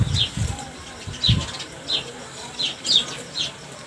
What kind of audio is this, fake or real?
real